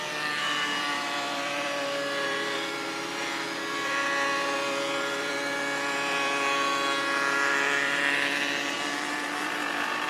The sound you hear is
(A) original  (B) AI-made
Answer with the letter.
B